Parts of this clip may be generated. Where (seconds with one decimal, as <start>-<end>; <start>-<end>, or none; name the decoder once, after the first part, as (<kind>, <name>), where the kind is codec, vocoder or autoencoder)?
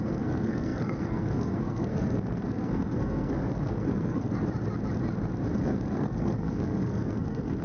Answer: 0.0-4.3 (codec, SNAC); 5.6-7.6